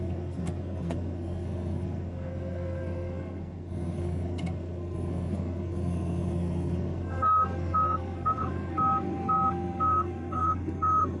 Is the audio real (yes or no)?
no